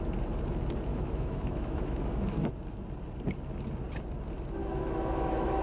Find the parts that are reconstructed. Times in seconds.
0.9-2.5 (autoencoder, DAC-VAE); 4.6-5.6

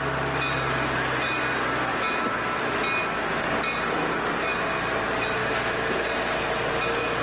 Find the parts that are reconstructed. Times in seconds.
none

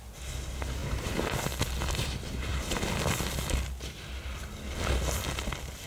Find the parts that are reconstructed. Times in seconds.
0.8-1.4 (vocoder, BigVGAN v2)

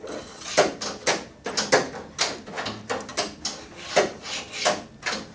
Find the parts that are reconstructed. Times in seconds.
none

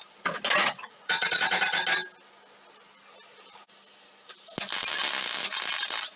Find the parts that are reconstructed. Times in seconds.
0.6-1.8 (vocoder, Vocos)

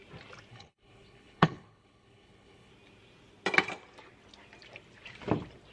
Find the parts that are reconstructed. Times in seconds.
0.5-2.7 (codec, HILCodec)

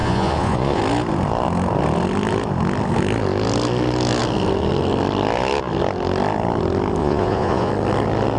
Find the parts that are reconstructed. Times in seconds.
0.0-0.8 (vocoder, Vocos); 7.0-7.7